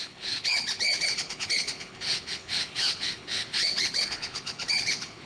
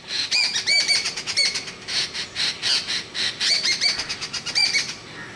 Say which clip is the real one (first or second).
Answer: second